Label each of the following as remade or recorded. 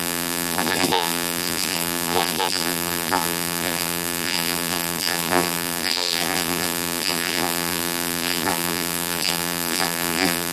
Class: remade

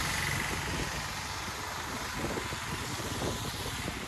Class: recorded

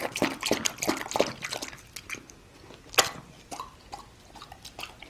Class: recorded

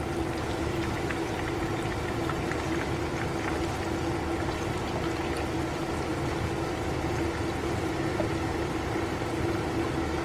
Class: recorded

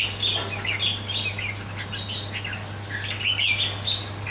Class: recorded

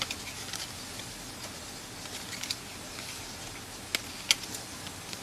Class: recorded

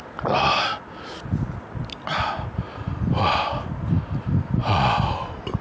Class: recorded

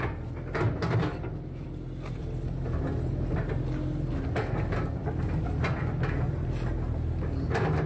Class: recorded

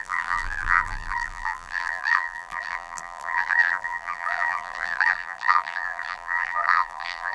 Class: remade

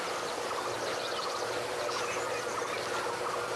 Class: recorded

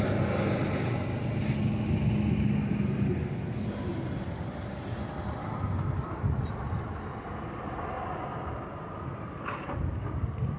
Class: recorded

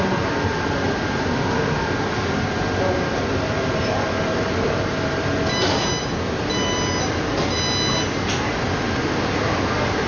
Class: recorded